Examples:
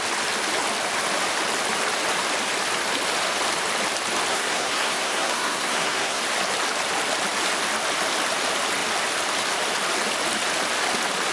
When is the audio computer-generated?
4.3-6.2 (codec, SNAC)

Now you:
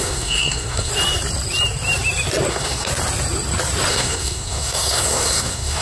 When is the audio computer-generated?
0.0-0.9 (codec, SNAC); 2.5-2.9; 3.9-5.8

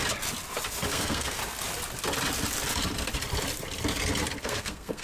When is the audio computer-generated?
0.9-1.4 (codec, SNAC); 4.4-5.0

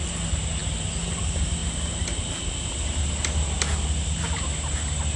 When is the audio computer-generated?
none

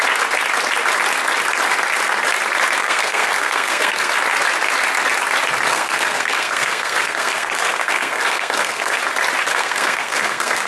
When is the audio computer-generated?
2.8-4.1 (codec, SNAC); 5.7-9.0; 9.5-10.7

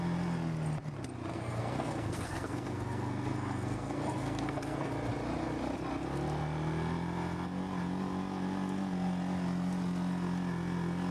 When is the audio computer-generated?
1.3-4.9 (codec, SNAC)